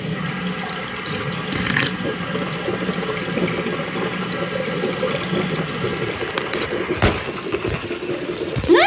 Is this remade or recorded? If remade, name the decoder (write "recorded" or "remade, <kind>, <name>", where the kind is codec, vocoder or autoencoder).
recorded